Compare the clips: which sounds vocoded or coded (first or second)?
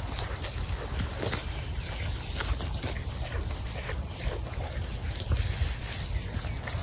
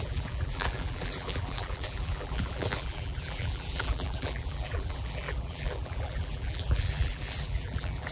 second